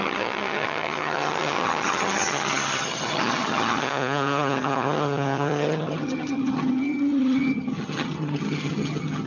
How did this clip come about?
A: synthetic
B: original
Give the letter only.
A